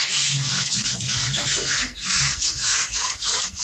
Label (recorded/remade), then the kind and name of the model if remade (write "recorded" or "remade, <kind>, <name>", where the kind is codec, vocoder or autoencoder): remade, codec, SNAC